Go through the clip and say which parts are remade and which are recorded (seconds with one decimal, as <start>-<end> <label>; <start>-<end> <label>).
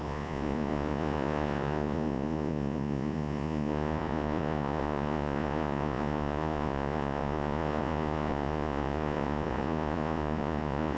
0.0-11.0 remade